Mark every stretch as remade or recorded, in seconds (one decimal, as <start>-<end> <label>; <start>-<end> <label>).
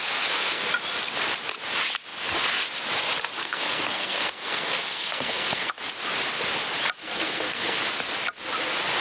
0.0-0.7 remade; 0.7-3.4 recorded; 3.4-5.8 remade; 5.8-7.0 recorded; 7.0-7.8 remade; 7.8-9.0 recorded